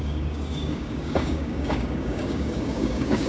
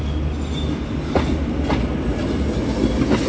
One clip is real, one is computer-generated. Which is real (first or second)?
second